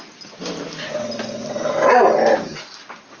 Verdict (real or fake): real